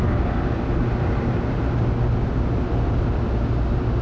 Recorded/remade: recorded